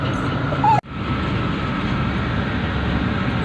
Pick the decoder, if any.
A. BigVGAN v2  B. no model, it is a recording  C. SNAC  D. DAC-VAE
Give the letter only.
B